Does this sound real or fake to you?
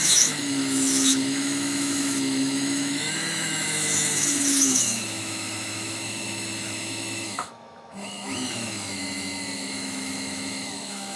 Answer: fake